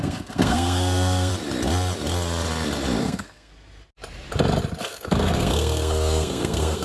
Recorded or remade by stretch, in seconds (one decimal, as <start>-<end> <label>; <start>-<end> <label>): 0.0-1.3 remade; 1.3-3.0 recorded; 3.0-3.5 remade; 3.5-4.8 recorded; 4.8-6.8 remade